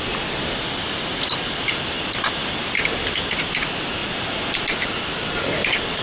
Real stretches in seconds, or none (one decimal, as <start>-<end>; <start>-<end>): 0.0-4.0